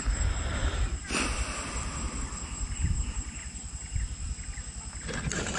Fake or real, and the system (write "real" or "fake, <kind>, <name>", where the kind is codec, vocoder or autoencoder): real